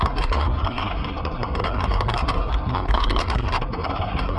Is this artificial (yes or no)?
yes